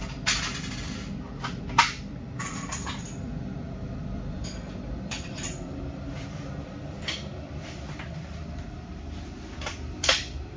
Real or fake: fake